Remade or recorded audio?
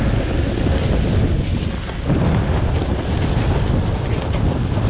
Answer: recorded